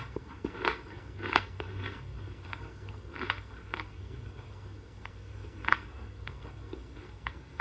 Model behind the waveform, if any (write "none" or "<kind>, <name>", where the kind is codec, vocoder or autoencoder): codec, SNAC